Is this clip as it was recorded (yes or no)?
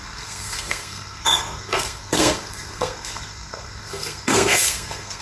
no